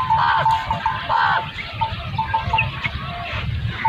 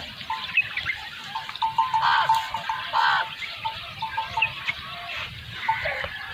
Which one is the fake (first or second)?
second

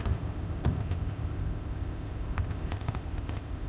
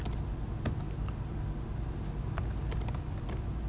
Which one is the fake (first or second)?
first